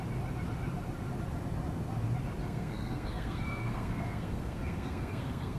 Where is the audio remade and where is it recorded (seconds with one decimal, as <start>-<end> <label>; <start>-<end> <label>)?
0.0-2.4 recorded; 2.4-5.6 remade